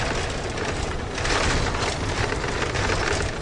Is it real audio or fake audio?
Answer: real